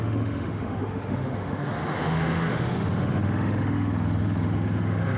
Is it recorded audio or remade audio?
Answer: remade